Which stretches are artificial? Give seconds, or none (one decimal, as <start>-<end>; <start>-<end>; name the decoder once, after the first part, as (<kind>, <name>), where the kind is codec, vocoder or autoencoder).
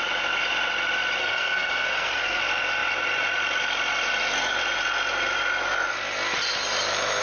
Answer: 1.2-2.4 (codec, SNAC)